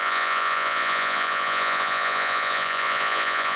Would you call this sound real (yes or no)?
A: no